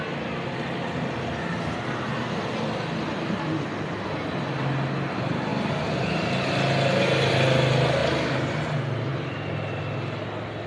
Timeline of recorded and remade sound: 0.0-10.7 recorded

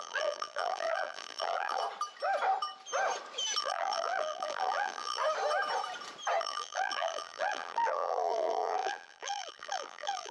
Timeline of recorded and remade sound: 0.0-1.8 remade; 1.8-3.6 recorded; 3.6-5.2 remade; 5.2-6.4 recorded; 6.4-10.3 remade

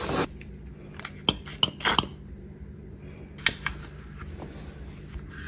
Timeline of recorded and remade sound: 0.0-5.5 recorded

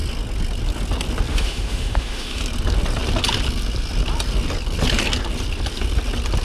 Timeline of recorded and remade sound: 0.0-1.3 recorded; 1.3-2.4 remade; 2.4-6.4 recorded

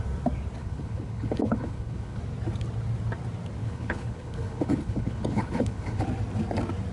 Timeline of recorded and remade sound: 0.0-0.6 recorded; 0.6-2.2 remade; 2.2-3.6 recorded; 3.6-6.0 remade; 6.0-6.9 recorded